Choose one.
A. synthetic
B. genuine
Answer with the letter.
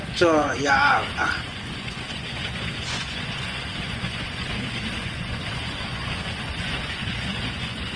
A